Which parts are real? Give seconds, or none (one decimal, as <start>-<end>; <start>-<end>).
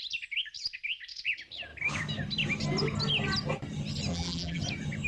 0.0-4.1; 4.6-5.1